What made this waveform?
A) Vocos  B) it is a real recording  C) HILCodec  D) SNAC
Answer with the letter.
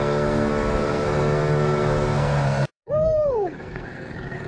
D